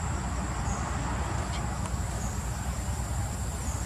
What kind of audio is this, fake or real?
real